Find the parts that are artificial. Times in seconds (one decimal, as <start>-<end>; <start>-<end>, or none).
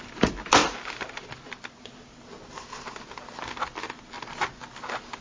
none